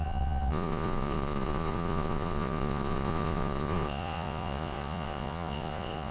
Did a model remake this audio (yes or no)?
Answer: yes